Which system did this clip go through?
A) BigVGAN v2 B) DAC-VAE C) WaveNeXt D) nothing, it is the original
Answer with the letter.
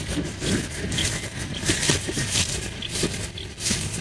D